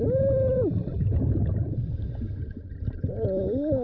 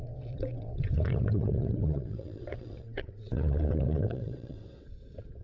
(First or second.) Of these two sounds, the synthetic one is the second